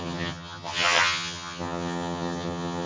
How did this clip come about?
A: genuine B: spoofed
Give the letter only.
B